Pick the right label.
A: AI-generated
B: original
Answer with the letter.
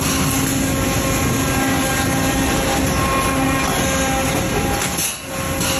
B